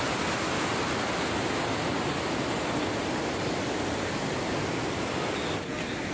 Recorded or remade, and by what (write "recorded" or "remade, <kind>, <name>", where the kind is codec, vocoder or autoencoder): recorded